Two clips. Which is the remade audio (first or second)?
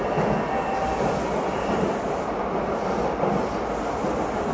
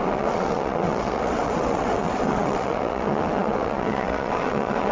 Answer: second